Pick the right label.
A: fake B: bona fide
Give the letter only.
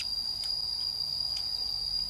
B